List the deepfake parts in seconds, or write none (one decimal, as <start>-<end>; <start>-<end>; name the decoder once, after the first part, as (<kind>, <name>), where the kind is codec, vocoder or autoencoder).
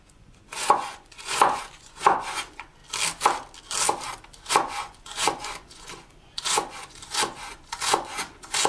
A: 0.0-2.8 (vocoder, Vocos); 4.5-8.7